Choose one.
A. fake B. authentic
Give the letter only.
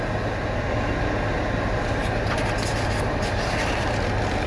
B